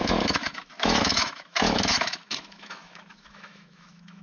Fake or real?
fake